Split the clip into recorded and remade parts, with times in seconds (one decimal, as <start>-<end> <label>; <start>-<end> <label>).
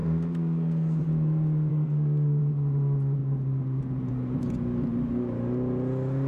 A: 0.0-1.0 remade; 1.0-1.7 recorded; 1.7-2.4 remade; 2.4-6.3 recorded